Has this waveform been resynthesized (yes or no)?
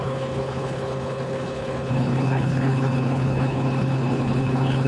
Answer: yes